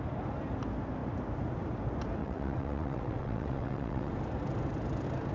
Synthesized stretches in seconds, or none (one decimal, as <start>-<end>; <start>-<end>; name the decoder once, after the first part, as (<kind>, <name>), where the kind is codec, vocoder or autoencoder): 2.2-4.1 (vocoder, WaveNeXt)